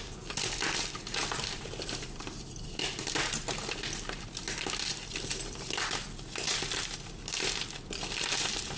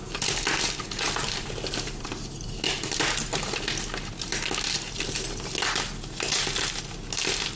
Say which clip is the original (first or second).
second